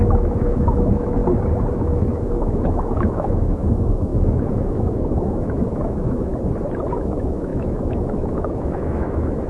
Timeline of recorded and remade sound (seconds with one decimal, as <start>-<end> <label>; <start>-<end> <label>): 0.0-1.2 remade; 1.2-1.7 recorded; 1.7-6.3 remade; 6.3-6.9 recorded; 6.9-9.5 remade